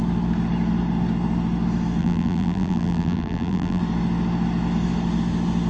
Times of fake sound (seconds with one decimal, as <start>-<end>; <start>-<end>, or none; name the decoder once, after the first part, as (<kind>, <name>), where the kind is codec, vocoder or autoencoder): 2.0-3.8 (vocoder, BigVGAN v2)

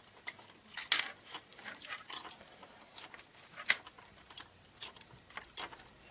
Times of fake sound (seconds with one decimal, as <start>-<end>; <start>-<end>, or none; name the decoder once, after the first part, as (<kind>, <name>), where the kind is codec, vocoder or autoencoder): 1.5-5.1 (vocoder, BigVGAN v2)

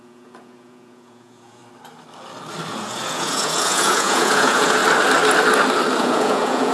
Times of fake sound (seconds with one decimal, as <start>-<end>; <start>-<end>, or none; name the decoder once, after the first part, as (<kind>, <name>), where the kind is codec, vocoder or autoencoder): 0.0-1.6 (vocoder, Vocos); 2.8-4.8; 6.0-6.7

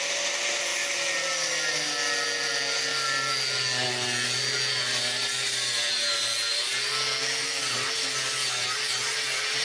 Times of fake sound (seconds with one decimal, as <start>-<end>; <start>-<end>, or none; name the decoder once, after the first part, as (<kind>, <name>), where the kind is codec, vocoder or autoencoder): none

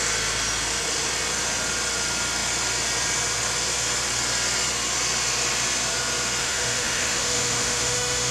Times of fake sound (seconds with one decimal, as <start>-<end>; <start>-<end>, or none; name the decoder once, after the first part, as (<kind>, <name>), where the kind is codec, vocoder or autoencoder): 6.4-8.3 (autoencoder, DAC-VAE)